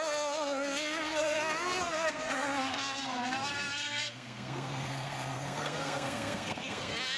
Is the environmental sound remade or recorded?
remade